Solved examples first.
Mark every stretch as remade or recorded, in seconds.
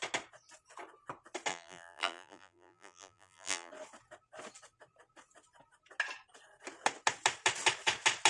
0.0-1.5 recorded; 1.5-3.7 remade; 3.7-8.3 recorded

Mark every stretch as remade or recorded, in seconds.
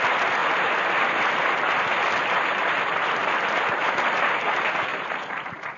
0.0-4.9 recorded; 4.9-5.8 remade